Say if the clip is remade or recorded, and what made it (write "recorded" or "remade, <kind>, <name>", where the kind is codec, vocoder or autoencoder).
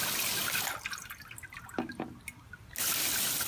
recorded